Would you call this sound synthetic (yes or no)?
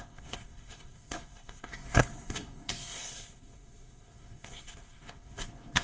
yes